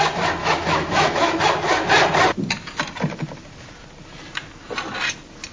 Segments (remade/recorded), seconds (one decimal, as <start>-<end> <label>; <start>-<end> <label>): 0.0-0.4 recorded; 0.4-1.4 remade; 1.4-5.5 recorded